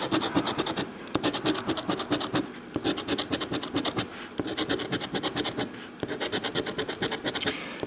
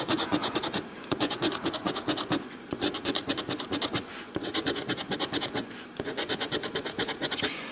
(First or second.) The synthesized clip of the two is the second